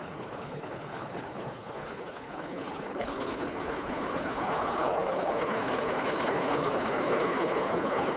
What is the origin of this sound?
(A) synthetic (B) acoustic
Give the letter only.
A